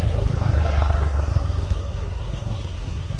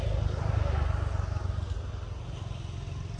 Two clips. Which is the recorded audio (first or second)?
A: second